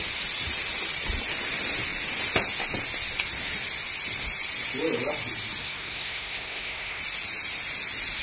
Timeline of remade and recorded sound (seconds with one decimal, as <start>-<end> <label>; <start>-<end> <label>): 0.0-5.6 recorded; 5.6-7.0 remade; 7.0-8.2 recorded